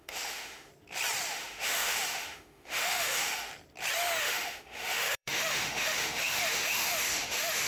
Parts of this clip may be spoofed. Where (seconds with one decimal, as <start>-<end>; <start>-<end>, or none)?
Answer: 0.0-0.7; 1.3-3.5; 4.2-7.7